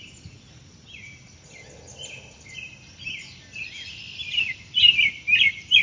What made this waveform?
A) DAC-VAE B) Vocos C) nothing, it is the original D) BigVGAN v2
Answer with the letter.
D